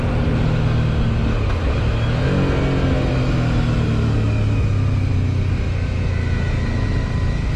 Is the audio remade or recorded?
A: recorded